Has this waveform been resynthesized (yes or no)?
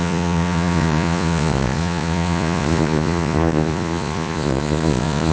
yes